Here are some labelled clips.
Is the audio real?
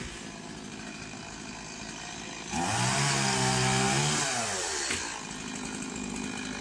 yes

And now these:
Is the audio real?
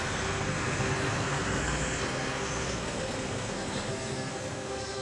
no